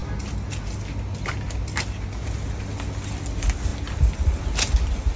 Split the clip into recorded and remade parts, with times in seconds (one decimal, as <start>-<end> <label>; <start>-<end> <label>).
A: 0.0-5.2 recorded